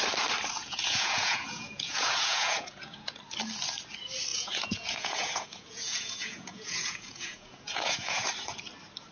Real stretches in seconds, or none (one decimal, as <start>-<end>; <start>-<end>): 0.0-0.6; 3.2-4.3; 8.3-9.1